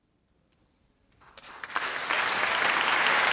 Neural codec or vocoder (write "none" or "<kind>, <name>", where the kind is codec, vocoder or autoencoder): none